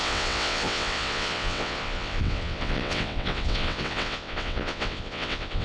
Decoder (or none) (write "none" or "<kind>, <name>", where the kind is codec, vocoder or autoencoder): vocoder, WaveNeXt